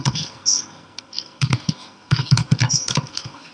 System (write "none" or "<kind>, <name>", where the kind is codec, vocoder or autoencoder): codec, SNAC